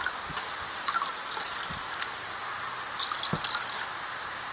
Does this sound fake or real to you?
real